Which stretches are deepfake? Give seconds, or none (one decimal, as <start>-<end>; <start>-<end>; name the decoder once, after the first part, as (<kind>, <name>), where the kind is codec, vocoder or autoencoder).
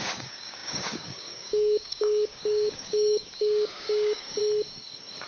0.0-4.4 (codec, DAC)